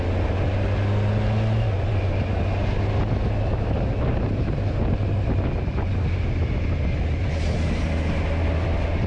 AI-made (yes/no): no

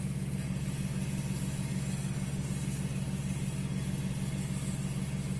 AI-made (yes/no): no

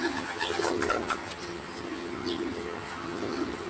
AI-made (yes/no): yes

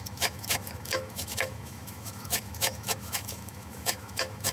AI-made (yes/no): yes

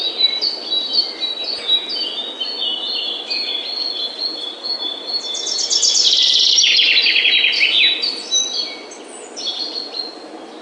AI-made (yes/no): no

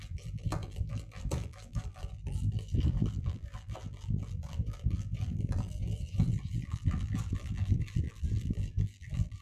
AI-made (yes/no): yes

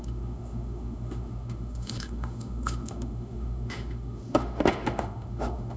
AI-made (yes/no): yes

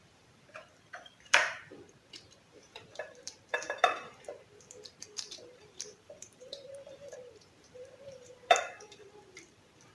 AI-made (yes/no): yes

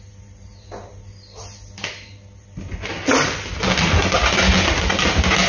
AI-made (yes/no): no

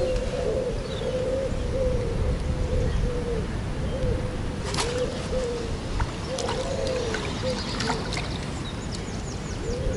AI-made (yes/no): no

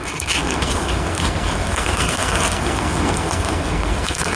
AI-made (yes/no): yes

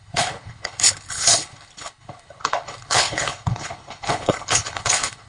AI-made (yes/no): yes